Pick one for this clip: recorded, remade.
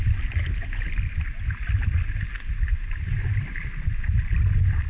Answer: recorded